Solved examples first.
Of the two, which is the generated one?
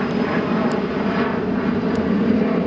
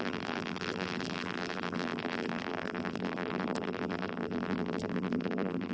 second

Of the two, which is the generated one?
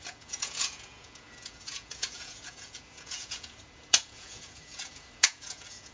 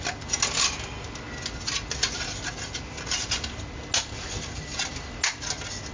first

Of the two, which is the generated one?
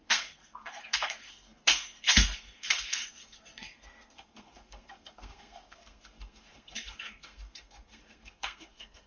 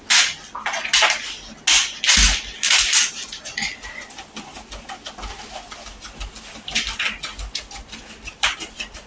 first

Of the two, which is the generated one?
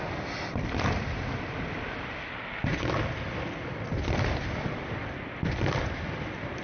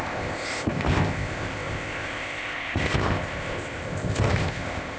second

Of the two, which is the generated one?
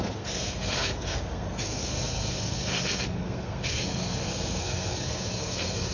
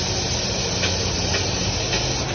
first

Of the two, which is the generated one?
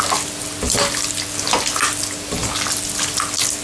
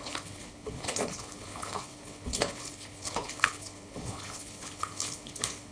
second